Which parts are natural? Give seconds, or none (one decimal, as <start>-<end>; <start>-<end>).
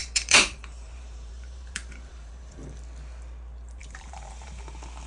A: 2.6-3.8; 4.6-5.1